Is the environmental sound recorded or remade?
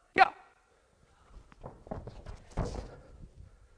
recorded